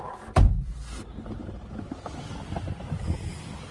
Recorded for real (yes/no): yes